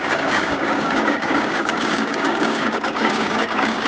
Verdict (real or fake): fake